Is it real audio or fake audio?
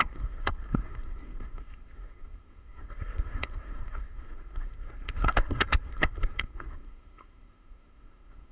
fake